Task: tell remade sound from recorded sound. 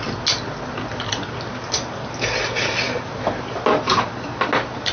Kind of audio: recorded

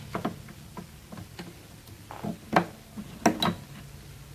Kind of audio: recorded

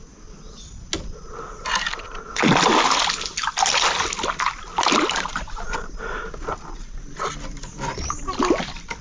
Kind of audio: recorded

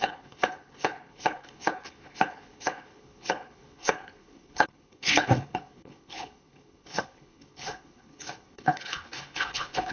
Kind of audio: remade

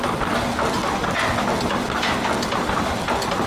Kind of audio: recorded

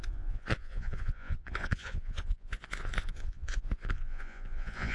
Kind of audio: remade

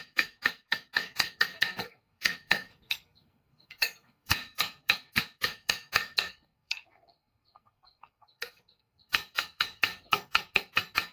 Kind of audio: remade